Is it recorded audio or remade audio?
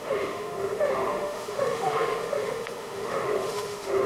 remade